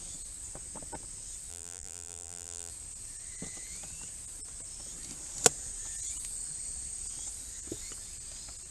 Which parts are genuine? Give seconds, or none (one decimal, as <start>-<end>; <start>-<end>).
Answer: 0.0-1.5; 2.7-8.7